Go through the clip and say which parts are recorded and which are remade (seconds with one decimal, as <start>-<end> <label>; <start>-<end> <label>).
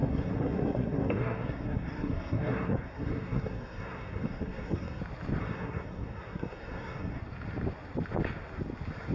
0.0-5.0 remade; 5.0-5.4 recorded; 5.4-7.2 remade; 7.2-9.1 recorded